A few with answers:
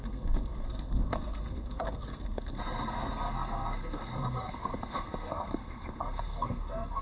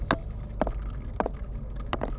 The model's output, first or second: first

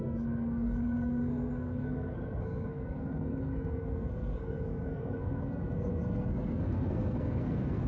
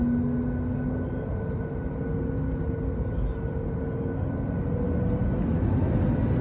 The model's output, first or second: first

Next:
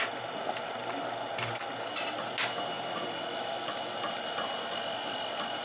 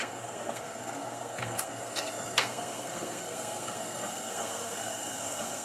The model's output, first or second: second